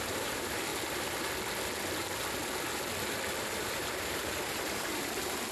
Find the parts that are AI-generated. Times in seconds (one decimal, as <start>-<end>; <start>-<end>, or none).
0.0-0.7; 3.4-5.5